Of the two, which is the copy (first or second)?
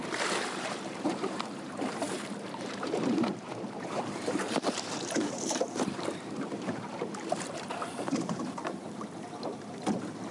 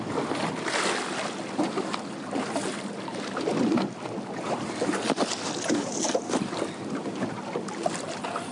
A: first